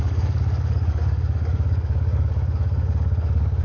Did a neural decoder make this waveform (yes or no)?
yes